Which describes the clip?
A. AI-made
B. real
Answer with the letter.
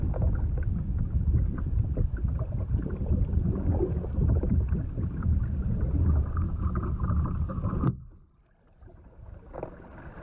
B